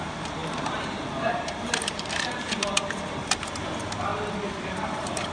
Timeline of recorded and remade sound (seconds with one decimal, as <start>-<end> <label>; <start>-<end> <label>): 0.0-4.1 remade; 4.1-4.7 recorded; 4.7-5.3 remade